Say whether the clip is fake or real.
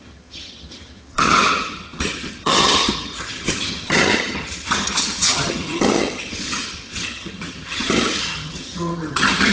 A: fake